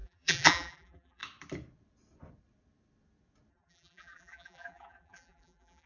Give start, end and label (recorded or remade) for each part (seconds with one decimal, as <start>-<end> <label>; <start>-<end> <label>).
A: 0.0-1.2 remade; 1.2-3.5 recorded; 3.5-5.9 remade